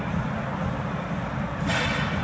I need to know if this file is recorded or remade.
recorded